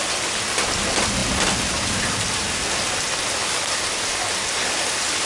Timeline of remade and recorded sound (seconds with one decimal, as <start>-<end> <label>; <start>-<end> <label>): 0.0-5.3 remade